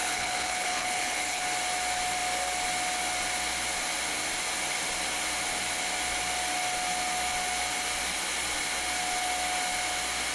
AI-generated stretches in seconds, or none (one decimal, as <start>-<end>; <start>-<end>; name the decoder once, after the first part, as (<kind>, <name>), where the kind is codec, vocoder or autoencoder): 0.0-1.4 (codec, HILCodec)